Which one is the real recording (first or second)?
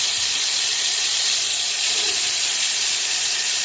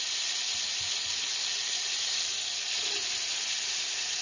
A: second